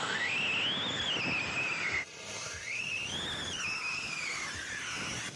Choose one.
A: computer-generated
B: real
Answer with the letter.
B